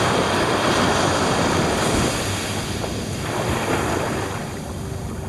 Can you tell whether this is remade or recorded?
recorded